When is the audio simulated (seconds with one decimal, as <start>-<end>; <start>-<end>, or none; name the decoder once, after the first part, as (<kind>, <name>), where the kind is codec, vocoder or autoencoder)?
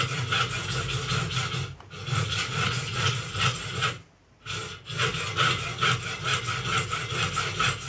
2.1-3.4 (vocoder, Vocos)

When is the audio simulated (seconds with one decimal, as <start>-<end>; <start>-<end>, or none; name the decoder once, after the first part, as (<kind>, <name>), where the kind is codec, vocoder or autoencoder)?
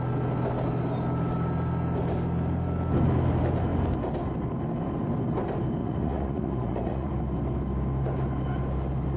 5.8-7.1 (vocoder, Vocos)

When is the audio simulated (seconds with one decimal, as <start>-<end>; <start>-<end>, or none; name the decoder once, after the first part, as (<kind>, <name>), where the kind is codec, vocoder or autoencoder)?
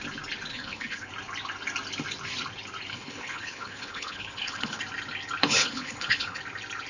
0.5-1.1 (codec, HILCodec); 2.9-4.8; 5.4-6.4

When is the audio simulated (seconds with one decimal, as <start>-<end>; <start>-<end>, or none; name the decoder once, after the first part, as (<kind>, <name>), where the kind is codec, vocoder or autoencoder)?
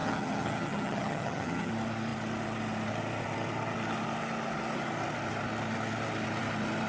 0.0-1.7 (vocoder, HiFi-GAN)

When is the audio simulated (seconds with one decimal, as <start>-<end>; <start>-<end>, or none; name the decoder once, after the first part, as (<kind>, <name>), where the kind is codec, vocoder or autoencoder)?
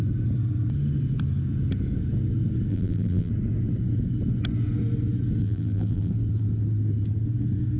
2.7-3.3 (vocoder, BigVGAN v2); 5.4-6.1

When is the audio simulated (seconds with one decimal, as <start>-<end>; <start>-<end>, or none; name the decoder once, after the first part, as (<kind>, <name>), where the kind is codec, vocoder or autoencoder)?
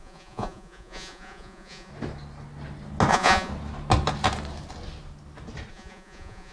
0.0-1.9 (vocoder, Vocos); 3.1-3.5; 5.7-6.5